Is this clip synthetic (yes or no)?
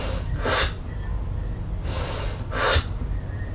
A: no